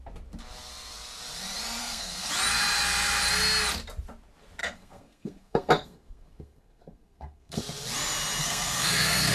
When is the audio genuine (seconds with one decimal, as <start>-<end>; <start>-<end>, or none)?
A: 0.0-1.8; 2.3-4.6; 7.6-8.4